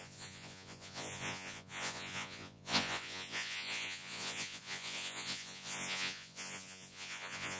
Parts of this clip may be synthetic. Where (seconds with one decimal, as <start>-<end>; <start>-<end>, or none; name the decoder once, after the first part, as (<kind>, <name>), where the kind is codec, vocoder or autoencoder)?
0.0-7.6 (vocoder, Vocos)